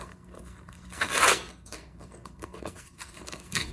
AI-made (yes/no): yes